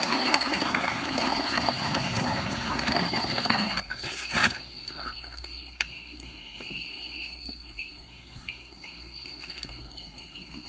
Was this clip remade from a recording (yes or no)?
yes